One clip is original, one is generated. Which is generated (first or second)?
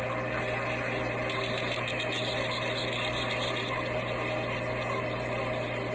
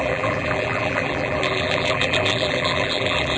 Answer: second